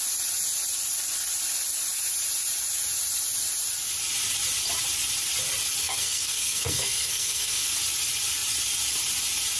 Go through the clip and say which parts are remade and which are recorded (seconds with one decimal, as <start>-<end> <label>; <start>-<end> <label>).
0.0-5.8 recorded; 5.8-7.7 remade; 7.7-9.6 recorded